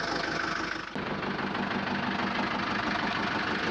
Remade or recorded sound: recorded